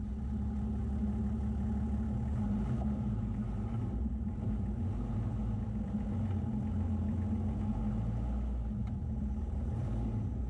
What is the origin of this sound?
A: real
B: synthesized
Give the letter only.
A